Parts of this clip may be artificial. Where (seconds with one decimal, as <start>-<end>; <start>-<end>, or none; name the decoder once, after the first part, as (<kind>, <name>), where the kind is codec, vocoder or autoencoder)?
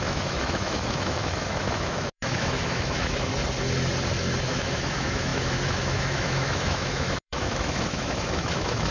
0.0-3.3 (autoencoder, DAC-VAE); 4.4-8.9